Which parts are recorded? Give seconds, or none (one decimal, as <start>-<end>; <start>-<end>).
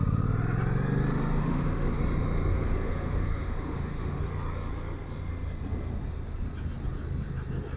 0.0-1.4; 2.0-2.5; 4.2-7.8